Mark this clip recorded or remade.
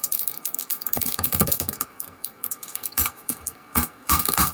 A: remade